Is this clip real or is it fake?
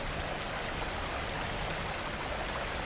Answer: real